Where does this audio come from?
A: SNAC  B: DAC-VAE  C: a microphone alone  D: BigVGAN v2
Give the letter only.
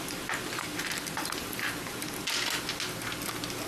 C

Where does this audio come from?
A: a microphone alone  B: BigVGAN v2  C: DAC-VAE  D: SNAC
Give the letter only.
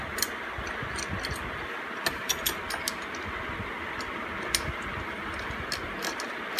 A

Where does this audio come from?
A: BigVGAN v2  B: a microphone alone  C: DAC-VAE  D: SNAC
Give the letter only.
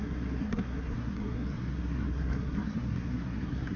D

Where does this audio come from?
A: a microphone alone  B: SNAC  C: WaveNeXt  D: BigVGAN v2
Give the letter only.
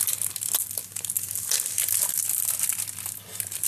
A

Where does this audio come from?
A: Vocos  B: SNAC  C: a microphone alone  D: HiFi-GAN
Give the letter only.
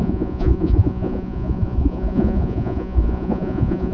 A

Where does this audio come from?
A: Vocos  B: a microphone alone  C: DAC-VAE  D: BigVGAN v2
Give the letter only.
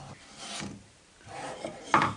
B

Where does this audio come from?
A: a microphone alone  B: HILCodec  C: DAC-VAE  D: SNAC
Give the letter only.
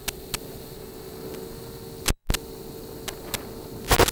A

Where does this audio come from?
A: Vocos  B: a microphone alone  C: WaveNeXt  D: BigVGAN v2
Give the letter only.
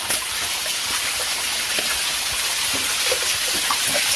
B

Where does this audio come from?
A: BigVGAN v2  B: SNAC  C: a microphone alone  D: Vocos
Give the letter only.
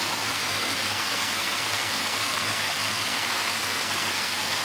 B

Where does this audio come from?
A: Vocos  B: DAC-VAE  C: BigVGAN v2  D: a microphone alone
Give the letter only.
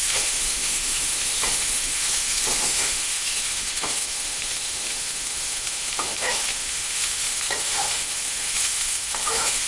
B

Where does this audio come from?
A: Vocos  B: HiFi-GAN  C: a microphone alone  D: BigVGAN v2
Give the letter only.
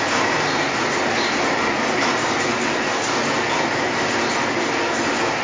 C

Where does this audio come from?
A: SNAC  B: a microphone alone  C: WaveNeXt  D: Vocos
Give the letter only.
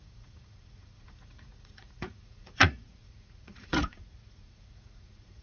D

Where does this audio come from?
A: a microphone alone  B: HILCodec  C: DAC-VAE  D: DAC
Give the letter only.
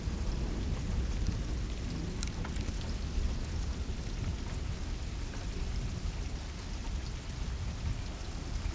A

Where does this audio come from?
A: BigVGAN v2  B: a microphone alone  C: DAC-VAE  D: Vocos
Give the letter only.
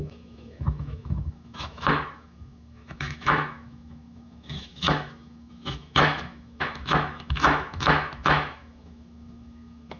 C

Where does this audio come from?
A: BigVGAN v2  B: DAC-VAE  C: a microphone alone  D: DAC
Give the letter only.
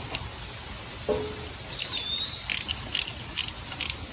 C